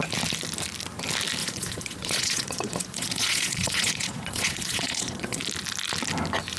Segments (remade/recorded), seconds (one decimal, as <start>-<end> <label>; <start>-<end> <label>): 0.0-1.4 recorded; 1.4-5.4 remade; 5.4-6.6 recorded

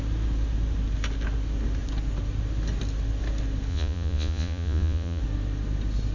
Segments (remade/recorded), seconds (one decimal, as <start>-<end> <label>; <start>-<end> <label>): 0.0-3.7 recorded; 3.7-5.2 remade; 5.2-6.1 recorded

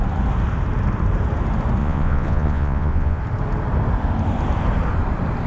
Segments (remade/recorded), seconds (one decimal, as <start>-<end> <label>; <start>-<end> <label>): 0.0-1.8 recorded; 1.8-3.2 remade; 3.2-5.5 recorded

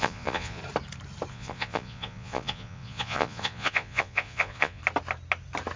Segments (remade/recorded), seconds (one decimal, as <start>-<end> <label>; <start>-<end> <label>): 0.0-0.6 remade; 0.6-1.3 recorded; 1.3-4.8 remade; 4.8-5.8 recorded

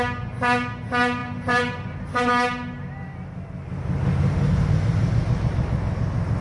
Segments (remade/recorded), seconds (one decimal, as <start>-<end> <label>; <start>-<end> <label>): 0.0-6.4 recorded

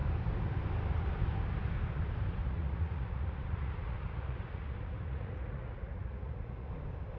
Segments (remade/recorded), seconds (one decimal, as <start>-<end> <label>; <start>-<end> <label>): 0.0-2.4 recorded; 2.4-6.7 remade; 6.7-7.2 recorded